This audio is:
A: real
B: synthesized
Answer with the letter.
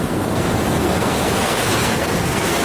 B